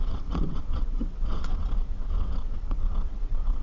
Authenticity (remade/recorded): remade